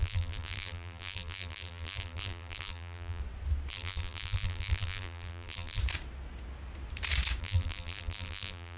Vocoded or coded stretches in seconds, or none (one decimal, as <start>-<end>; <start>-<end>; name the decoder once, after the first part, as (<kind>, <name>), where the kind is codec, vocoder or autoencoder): 0.0-3.2 (vocoder, BigVGAN v2); 3.7-5.8; 7.4-8.8